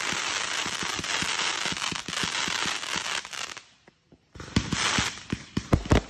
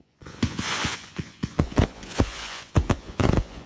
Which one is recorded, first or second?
first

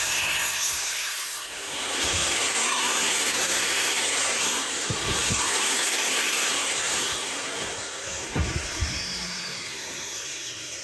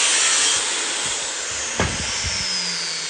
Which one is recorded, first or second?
second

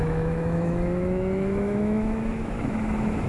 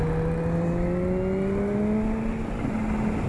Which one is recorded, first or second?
second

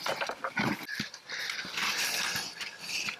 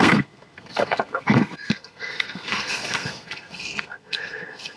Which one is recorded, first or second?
first